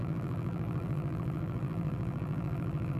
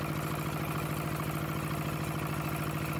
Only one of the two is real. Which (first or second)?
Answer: second